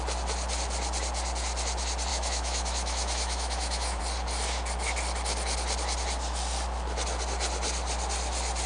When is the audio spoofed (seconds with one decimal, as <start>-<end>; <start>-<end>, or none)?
2.1-4.0